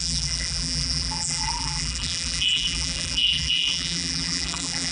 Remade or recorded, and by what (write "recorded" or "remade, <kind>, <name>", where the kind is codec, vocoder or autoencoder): remade, vocoder, BigVGAN v2